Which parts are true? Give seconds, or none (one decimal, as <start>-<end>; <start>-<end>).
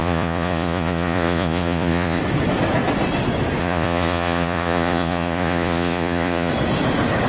2.2-3.6; 6.5-7.3